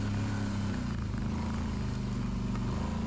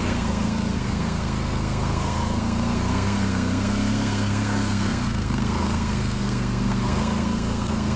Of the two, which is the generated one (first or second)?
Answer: second